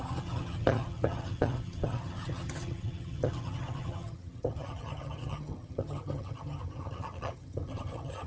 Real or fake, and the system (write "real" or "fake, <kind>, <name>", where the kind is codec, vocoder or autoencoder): fake, vocoder, HiFi-GAN